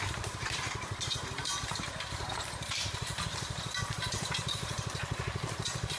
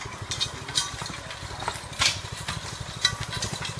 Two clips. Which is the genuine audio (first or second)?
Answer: second